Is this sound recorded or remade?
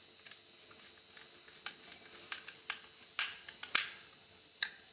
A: recorded